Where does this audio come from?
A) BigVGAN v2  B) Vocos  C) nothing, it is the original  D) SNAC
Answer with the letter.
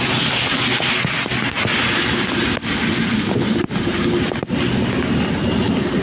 C